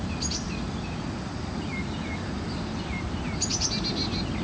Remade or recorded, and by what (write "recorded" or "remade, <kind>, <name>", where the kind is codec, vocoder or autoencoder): recorded